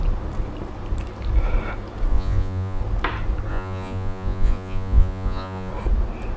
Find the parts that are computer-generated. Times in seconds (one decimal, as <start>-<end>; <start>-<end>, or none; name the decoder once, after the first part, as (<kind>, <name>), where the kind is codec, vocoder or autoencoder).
2.1-2.8 (vocoder, Vocos); 3.5-5.7